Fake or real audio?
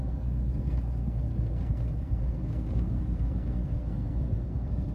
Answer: fake